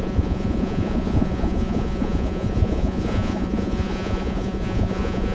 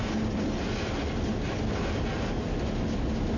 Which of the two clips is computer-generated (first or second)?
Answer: first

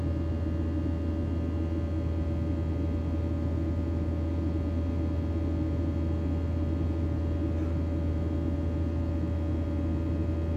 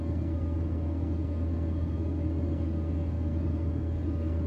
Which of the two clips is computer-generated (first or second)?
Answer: second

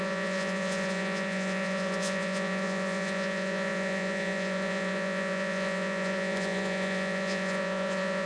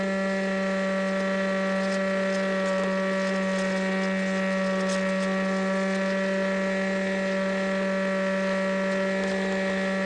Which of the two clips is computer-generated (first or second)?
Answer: first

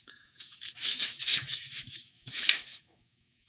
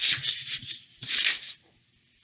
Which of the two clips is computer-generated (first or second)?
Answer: first